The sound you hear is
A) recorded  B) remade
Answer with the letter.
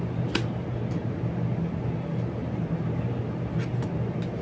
A